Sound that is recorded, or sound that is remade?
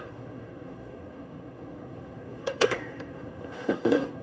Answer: remade